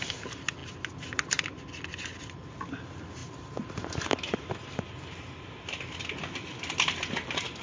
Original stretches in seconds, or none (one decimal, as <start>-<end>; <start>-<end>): 0.0-7.6